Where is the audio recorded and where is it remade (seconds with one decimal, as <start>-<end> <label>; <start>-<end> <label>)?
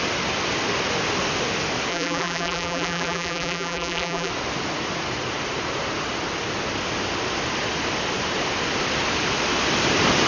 0.0-1.9 recorded; 1.9-4.3 remade; 4.3-10.3 recorded